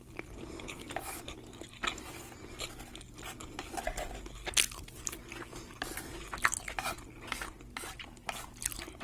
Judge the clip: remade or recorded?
recorded